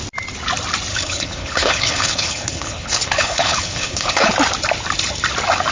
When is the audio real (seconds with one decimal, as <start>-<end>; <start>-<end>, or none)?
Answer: 0.0-0.9; 4.3-5.7